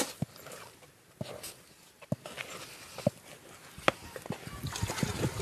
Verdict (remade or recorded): recorded